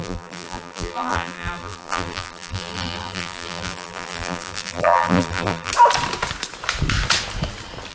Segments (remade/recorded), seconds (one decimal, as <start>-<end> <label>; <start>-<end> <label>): 0.0-5.7 remade; 5.7-7.9 recorded

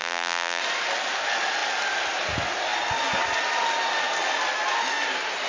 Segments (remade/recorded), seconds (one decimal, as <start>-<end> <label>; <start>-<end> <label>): 0.0-0.6 remade; 0.6-5.5 recorded